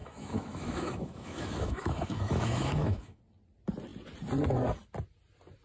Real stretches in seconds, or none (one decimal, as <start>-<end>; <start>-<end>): 3.2-5.6